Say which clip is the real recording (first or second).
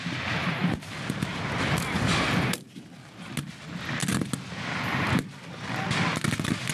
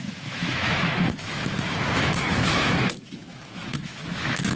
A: first